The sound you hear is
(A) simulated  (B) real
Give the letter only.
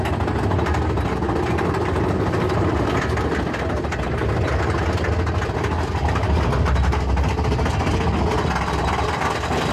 B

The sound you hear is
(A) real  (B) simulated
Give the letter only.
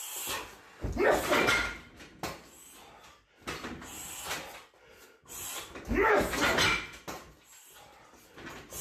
A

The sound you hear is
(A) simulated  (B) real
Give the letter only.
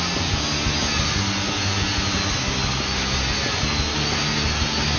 B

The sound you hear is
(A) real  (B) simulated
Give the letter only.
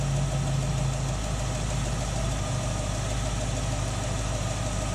A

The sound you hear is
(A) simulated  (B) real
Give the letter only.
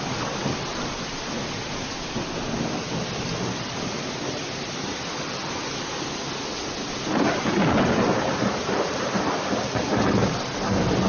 B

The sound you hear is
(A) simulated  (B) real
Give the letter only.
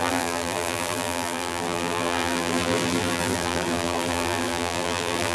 A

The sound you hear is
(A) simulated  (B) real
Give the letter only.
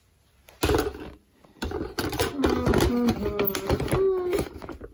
B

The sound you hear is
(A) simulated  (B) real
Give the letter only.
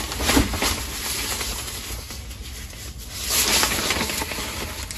B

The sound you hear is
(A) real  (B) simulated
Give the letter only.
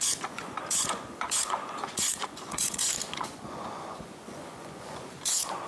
B